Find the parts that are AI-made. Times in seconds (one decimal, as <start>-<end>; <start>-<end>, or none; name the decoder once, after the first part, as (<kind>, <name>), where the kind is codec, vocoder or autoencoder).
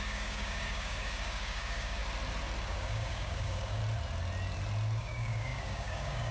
0.0-2.0 (codec, DAC); 2.6-3.8; 5.0-6.3